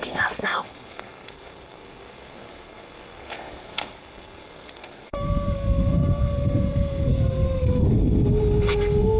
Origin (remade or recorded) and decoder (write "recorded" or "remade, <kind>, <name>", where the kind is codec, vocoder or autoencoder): remade, codec, SNAC